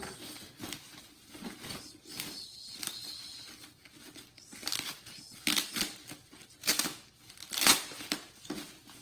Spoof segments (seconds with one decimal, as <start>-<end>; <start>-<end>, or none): 6.6-7.1